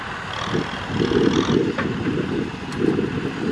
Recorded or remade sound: recorded